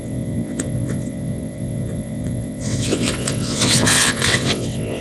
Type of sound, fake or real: fake